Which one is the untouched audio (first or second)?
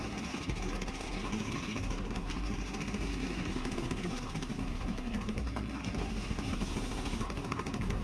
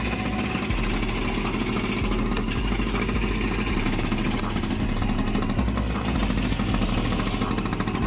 second